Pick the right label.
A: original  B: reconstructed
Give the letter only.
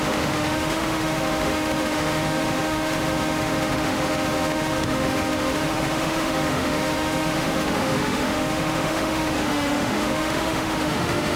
B